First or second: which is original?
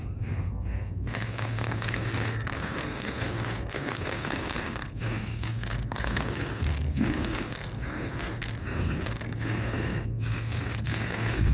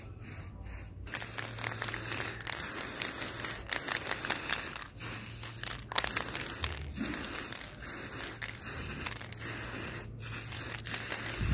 second